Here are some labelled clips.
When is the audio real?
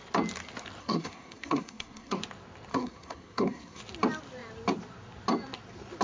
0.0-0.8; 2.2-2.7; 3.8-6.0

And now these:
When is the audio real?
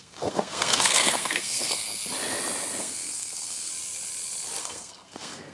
2.0-2.8; 3.7-4.6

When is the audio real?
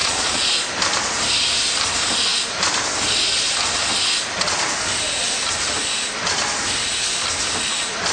0.5-8.1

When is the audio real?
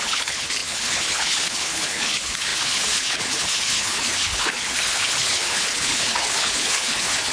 none